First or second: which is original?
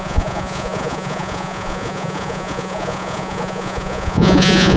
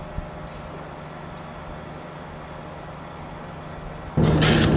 second